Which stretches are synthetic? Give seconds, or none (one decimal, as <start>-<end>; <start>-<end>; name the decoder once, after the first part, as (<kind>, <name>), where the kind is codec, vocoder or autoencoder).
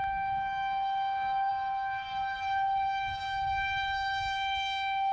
0.0-5.1 (codec, DAC)